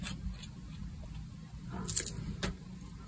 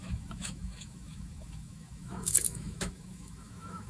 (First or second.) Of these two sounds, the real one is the first